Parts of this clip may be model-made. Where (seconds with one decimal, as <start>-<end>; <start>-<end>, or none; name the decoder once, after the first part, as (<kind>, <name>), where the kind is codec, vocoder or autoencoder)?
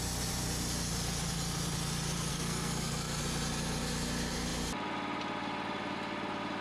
2.3-3.2 (codec, SNAC)